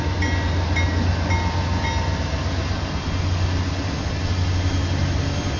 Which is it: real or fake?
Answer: real